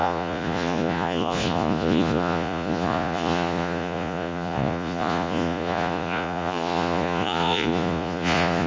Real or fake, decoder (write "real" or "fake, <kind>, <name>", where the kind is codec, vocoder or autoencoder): fake, vocoder, Vocos